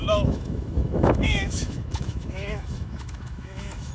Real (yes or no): no